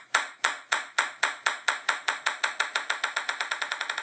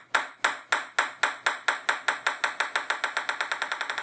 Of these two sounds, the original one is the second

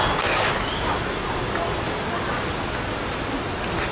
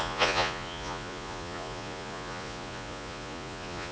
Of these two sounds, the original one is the first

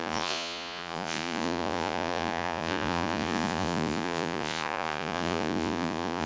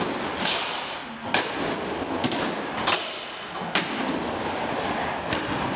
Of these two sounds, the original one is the second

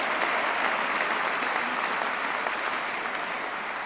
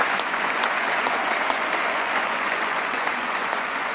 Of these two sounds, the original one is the first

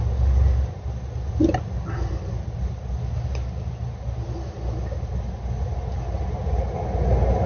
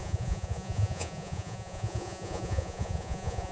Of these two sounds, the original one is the first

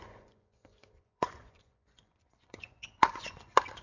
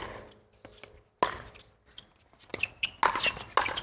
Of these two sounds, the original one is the second